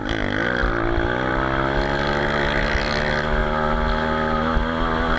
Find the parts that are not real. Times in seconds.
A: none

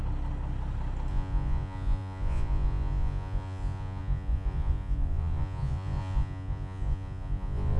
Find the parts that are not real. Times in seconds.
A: 1.1-7.8 (vocoder, Vocos)

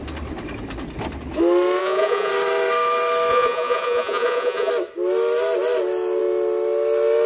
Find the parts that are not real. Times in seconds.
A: 1.8-2.3 (vocoder, Vocos); 3.3-4.7

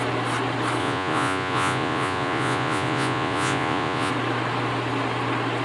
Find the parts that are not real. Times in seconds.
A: 0.8-4.1 (vocoder, Vocos)

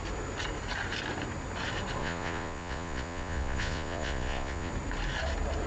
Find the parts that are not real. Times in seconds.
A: 2.0-4.7 (vocoder, Vocos)